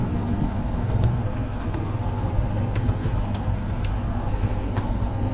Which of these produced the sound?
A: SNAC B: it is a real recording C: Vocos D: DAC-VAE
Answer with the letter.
A